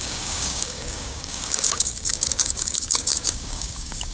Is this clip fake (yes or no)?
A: yes